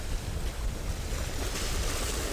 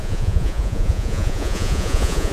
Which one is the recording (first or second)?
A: first